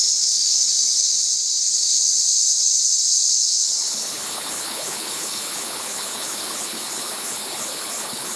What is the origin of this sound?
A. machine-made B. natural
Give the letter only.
A